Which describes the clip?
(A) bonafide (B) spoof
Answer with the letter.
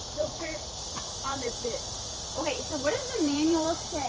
B